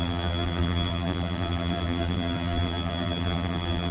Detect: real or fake fake